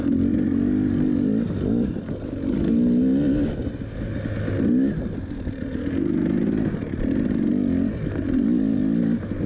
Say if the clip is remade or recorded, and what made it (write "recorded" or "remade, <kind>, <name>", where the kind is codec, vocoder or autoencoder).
recorded